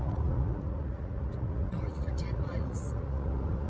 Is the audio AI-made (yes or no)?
yes